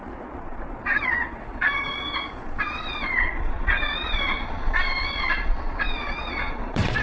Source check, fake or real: fake